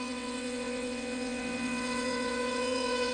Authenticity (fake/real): fake